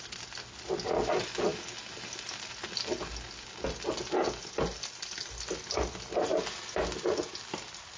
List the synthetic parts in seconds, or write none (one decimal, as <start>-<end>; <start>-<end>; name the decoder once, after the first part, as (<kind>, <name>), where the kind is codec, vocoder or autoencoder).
none

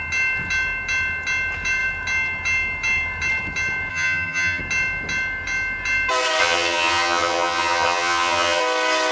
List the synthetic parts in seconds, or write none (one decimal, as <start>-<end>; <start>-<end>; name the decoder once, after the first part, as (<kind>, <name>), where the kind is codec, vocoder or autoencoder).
3.9-4.6 (vocoder, HiFi-GAN); 6.4-8.6

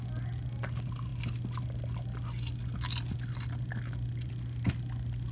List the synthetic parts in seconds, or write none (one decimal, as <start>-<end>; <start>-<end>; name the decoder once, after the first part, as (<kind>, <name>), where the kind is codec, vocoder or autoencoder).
none

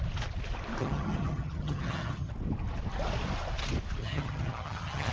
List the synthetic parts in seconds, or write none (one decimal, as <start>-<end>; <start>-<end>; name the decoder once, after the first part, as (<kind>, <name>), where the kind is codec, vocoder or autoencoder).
0.8-2.3 (vocoder, HiFi-GAN); 4.0-5.1

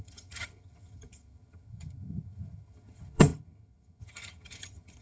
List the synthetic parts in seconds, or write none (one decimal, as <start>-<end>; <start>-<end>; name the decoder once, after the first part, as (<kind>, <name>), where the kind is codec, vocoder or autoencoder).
0.0-5.0 (vocoder, HiFi-GAN)